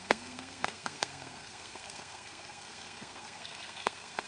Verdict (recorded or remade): remade